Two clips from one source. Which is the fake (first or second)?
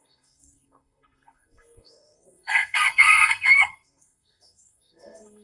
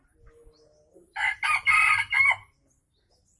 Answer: first